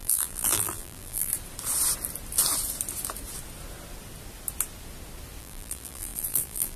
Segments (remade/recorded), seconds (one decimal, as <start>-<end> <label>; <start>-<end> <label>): 0.0-1.3 remade; 1.3-5.4 recorded; 5.4-6.8 remade